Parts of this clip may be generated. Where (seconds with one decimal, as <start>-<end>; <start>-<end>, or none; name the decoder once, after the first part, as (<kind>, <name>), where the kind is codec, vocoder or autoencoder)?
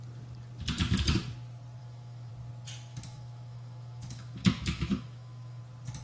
1.8-2.3 (autoencoder, DAC-VAE); 2.9-5.6